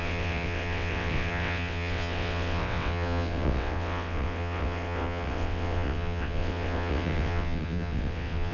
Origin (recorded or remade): remade